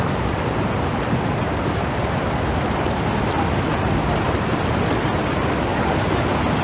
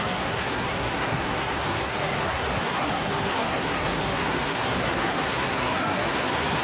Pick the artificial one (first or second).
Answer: second